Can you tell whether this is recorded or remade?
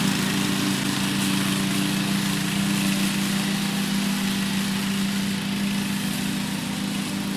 recorded